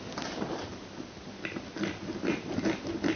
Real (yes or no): yes